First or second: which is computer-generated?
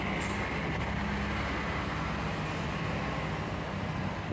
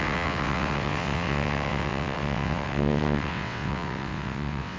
second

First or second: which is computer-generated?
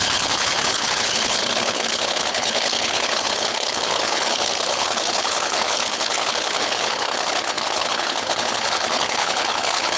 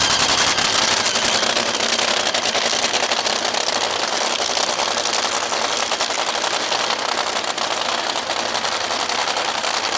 first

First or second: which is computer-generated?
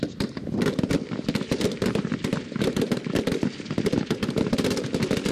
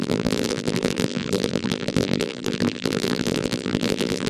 second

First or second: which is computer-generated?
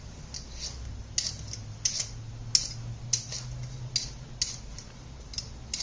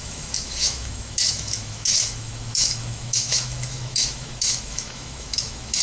second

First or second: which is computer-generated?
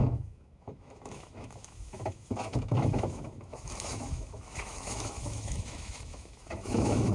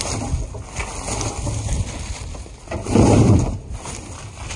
first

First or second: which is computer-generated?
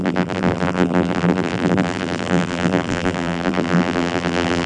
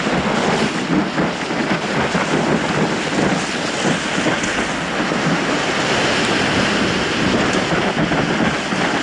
first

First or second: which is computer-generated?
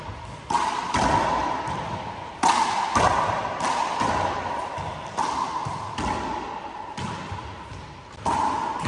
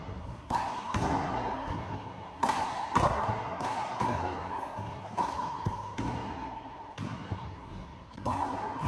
second